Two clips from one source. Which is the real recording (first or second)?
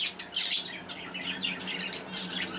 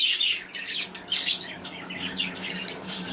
first